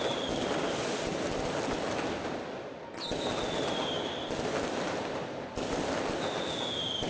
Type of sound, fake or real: real